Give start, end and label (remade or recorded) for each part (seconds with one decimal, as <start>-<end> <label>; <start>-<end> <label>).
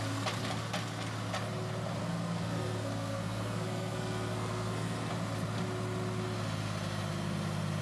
0.0-2.0 recorded; 2.0-5.1 remade; 5.1-7.8 recorded